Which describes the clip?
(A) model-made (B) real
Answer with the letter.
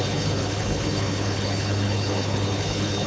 A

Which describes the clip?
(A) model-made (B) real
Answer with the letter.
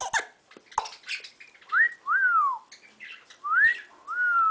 B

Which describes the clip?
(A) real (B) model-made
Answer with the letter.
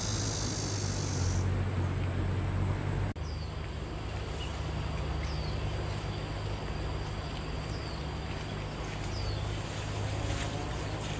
A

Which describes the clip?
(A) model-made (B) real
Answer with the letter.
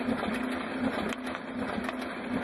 B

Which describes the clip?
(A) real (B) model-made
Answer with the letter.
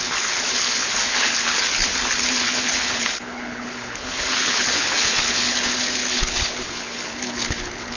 B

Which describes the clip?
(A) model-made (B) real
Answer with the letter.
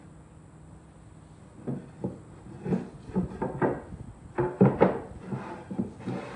B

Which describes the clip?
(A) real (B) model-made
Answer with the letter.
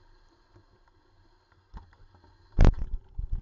A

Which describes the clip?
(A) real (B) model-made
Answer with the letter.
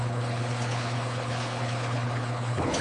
B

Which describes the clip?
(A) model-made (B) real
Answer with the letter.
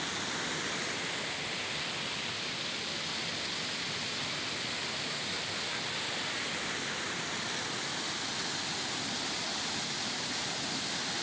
B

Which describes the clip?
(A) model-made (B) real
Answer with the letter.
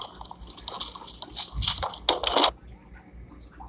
B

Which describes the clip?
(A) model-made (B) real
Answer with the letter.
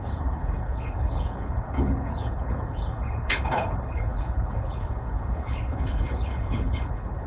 A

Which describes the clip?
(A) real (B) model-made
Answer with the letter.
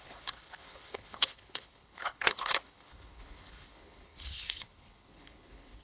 B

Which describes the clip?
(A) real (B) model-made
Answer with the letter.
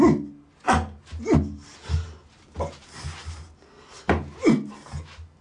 A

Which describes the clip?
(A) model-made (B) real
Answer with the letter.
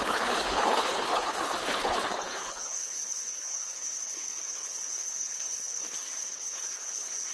A